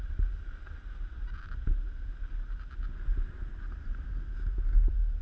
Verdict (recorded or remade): recorded